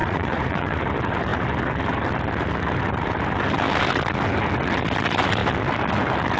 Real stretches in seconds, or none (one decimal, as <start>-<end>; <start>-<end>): 0.8-6.4